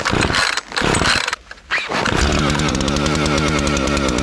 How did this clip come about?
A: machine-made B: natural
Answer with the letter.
B